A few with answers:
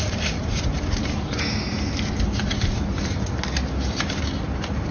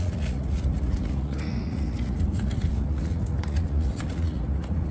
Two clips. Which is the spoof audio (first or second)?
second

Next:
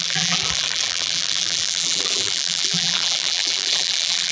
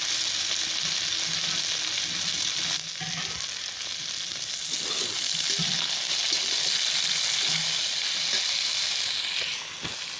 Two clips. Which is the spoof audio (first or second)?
first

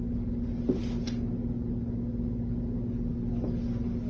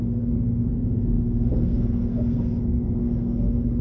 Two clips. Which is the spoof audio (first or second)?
second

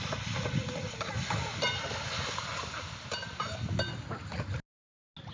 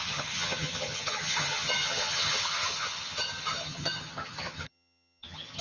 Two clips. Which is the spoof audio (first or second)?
second